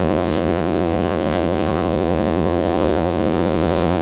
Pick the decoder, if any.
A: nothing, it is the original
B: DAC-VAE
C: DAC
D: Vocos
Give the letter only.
D